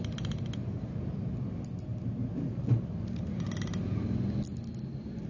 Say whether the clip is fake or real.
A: real